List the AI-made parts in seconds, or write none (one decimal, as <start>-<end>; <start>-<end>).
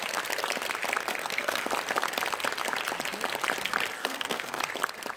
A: 1.2-1.7; 4.0-4.6